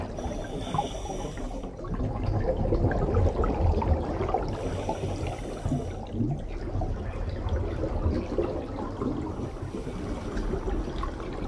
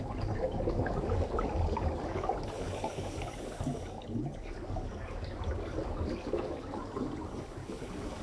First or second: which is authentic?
first